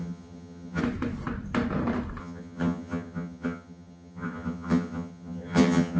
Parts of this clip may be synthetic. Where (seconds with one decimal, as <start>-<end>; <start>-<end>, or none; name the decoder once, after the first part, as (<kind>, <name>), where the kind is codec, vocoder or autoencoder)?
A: 0.0-0.8 (vocoder, HiFi-GAN); 2.2-6.0